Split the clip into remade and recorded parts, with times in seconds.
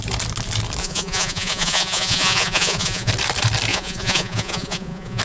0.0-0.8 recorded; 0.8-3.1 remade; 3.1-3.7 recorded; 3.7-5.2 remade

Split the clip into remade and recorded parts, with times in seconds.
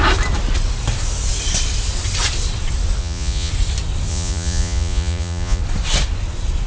0.0-3.0 recorded; 3.0-3.5 remade; 3.5-4.1 recorded; 4.1-5.6 remade; 5.6-6.7 recorded